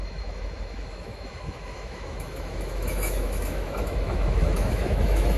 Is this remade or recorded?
remade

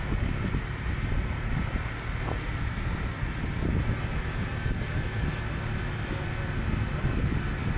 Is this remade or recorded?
recorded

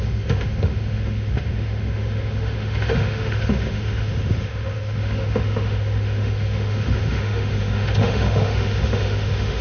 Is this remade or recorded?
remade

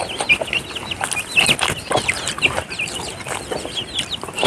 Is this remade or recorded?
recorded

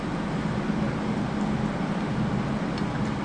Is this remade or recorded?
recorded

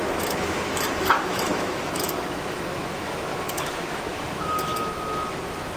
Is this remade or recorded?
remade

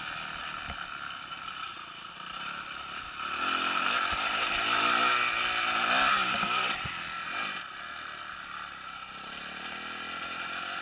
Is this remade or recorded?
recorded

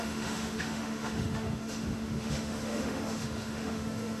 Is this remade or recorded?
remade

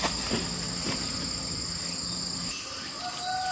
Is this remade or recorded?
recorded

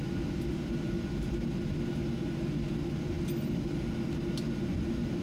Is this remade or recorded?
recorded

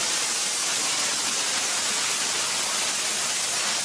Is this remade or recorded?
recorded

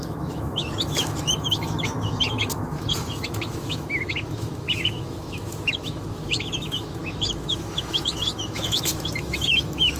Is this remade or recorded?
remade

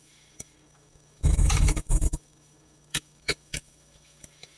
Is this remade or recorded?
remade